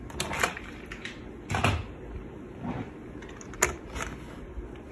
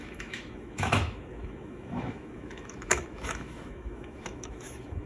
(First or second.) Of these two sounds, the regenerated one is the second